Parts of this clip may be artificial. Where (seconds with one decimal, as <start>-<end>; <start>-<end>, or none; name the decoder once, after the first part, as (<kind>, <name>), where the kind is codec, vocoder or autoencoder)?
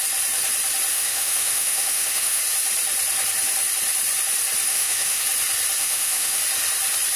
0.9-2.4 (autoencoder, DAC-VAE); 4.7-5.2; 5.8-6.4